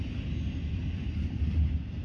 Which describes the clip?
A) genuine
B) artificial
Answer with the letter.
A